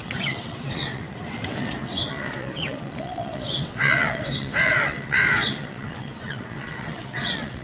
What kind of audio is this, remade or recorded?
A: remade